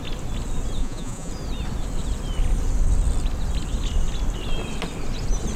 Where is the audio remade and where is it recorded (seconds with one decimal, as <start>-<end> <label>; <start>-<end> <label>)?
0.0-0.8 recorded; 0.8-1.3 remade; 1.3-5.6 recorded